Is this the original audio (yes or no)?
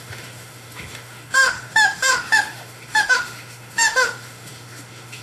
no